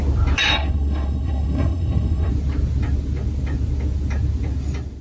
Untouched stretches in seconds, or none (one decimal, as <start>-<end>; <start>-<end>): 0.0-0.5; 2.3-5.0

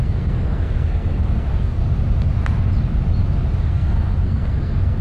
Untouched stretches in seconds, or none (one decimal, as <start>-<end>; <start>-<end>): 1.8-3.6

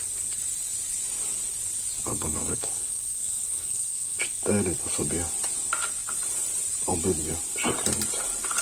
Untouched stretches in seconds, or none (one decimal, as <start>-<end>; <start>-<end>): 0.0-2.1; 4.2-8.6

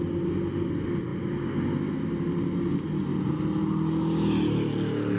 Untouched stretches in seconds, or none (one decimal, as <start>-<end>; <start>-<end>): 0.0-5.2

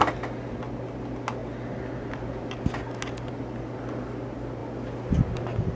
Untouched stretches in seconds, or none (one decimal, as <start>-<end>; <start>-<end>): 0.0-5.8

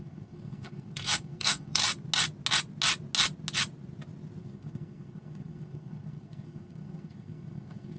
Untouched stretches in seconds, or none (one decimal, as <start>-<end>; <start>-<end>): 1.8-4.4

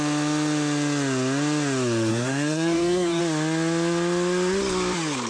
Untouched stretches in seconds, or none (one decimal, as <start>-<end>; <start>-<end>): 0.0-2.1; 3.2-5.3

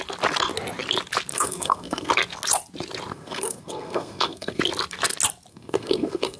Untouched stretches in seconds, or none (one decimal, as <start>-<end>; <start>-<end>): 0.0-1.3; 2.1-3.1; 4.6-5.5